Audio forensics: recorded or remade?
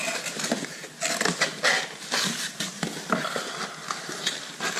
recorded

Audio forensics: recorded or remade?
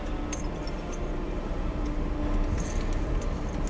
recorded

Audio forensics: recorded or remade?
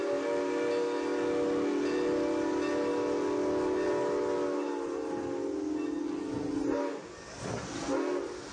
recorded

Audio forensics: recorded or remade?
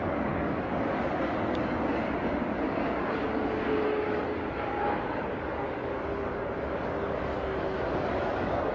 remade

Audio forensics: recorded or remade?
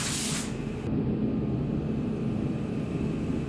recorded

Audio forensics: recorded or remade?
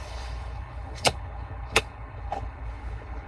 remade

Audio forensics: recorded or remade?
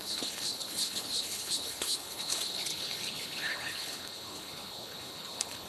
remade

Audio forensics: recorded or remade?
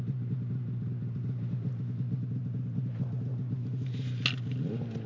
recorded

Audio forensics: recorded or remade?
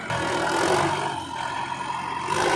recorded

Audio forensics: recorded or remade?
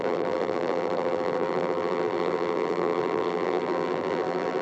remade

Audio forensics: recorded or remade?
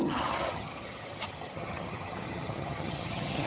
remade